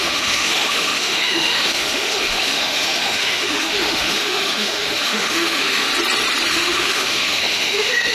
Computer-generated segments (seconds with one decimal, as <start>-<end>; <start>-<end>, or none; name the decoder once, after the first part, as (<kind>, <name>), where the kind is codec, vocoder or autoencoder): 0.0-5.9 (autoencoder, DAC-VAE); 6.5-8.1